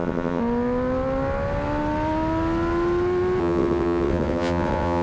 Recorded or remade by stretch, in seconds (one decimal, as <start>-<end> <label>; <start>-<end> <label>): 0.0-0.4 remade; 0.4-3.4 recorded; 3.4-5.0 remade